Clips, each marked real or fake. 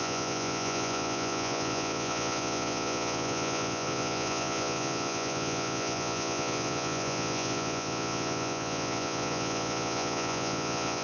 fake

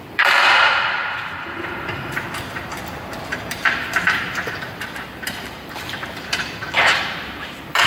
fake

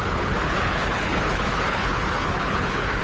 fake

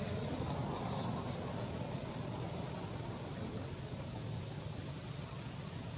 real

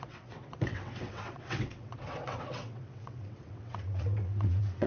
fake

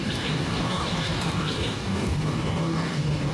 fake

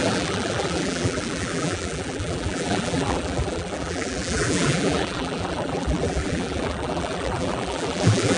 fake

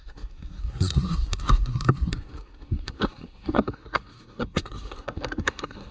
fake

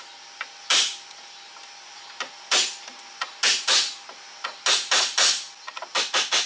real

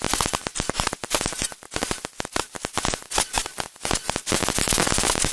real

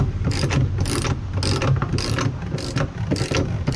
real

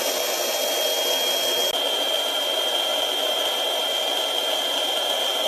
real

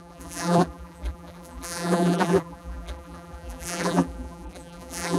fake